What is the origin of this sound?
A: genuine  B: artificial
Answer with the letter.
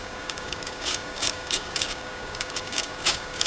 B